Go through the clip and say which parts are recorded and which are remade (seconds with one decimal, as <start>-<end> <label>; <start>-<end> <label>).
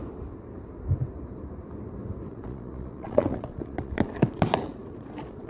0.0-2.3 recorded; 2.3-5.5 remade